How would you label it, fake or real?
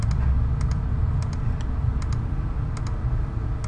real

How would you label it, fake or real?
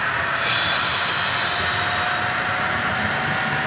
real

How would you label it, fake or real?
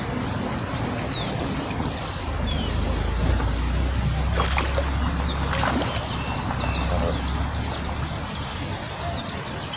real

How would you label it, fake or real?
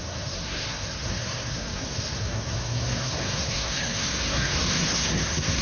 fake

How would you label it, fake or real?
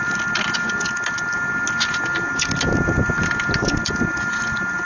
real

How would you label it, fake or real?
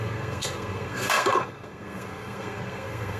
fake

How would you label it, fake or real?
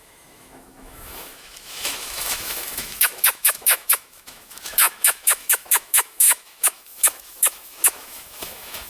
fake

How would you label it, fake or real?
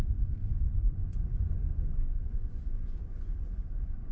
fake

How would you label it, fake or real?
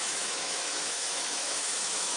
fake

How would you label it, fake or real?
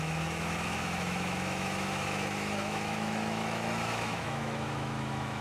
fake